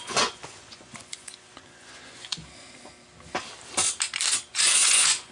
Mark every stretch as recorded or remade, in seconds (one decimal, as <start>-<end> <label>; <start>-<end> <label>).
0.0-2.4 remade; 2.4-4.5 recorded; 4.5-5.3 remade